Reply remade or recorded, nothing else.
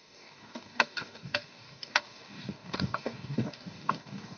remade